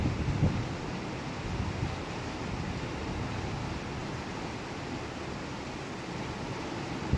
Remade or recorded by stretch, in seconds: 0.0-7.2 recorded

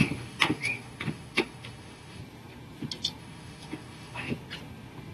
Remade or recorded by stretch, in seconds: 0.0-2.2 remade; 2.2-3.2 recorded; 3.2-4.3 remade; 4.3-5.1 recorded

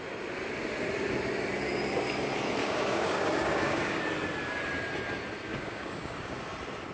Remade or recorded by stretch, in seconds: 0.0-2.6 recorded; 2.6-4.0 remade; 4.0-5.5 recorded; 5.5-6.4 remade; 6.4-6.9 recorded

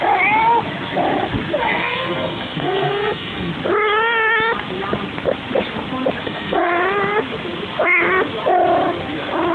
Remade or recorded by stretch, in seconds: 0.0-1.6 recorded; 1.6-3.5 remade; 3.5-6.2 recorded; 6.2-6.7 remade; 6.7-9.5 recorded

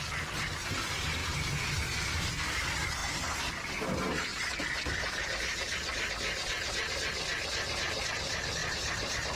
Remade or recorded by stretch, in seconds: 0.0-1.2 recorded; 1.2-1.7 remade; 1.7-4.3 recorded; 4.3-6.1 remade; 6.1-8.6 recorded; 8.6-9.4 remade